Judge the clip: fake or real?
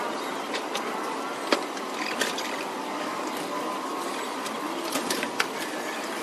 fake